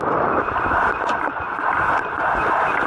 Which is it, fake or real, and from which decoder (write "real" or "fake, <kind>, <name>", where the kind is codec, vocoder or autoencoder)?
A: fake, vocoder, BigVGAN v2